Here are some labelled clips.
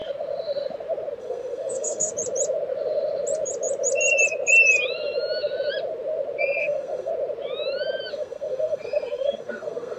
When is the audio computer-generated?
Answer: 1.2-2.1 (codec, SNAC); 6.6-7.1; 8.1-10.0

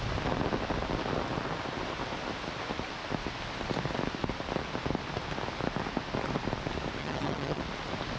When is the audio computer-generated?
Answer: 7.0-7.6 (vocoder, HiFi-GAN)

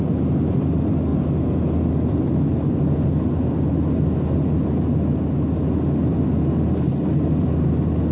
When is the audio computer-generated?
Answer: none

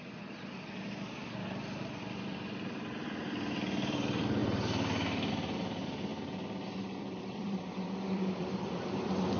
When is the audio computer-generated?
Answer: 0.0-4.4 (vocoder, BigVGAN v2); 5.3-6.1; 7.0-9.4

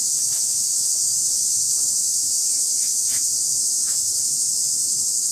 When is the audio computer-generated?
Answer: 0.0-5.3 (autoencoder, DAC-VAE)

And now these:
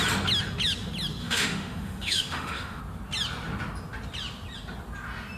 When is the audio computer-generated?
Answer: 1.2-2.8 (autoencoder, DAC-VAE)